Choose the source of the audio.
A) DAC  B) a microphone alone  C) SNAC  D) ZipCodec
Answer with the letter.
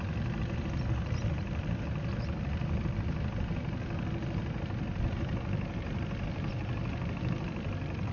B